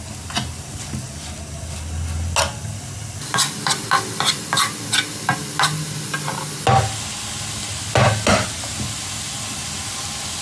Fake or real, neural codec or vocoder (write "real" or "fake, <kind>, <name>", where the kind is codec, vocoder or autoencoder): real